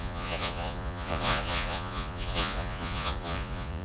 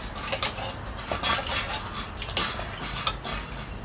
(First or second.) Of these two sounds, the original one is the second